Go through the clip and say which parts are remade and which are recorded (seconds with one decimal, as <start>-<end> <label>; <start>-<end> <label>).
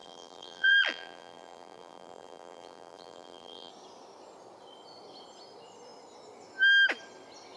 0.0-3.7 remade; 3.7-7.6 recorded